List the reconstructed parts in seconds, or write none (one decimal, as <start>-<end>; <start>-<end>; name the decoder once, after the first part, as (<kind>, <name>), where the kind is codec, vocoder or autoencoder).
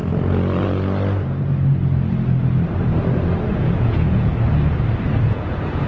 3.5-4.3 (vocoder, Vocos); 5.2-5.9